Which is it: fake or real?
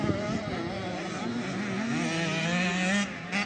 real